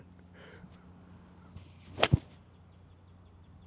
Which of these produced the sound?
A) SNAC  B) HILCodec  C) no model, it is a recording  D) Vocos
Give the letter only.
C